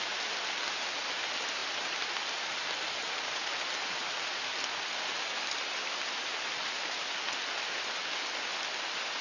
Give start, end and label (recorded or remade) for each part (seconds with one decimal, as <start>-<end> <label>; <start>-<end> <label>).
0.0-9.2 recorded